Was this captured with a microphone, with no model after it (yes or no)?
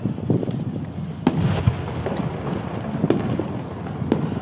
yes